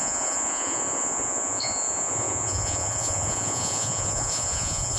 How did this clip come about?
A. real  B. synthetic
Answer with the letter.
B